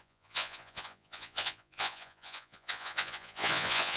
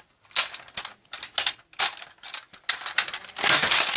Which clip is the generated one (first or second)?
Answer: first